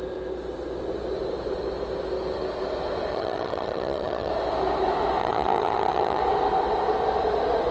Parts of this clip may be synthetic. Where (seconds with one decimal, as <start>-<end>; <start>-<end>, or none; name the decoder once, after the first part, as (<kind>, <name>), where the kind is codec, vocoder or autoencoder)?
3.1-4.3 (vocoder, HiFi-GAN); 5.2-6.2